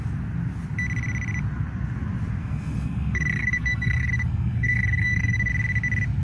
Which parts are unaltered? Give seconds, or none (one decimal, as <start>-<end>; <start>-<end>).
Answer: 0.0-2.4; 5.5-6.2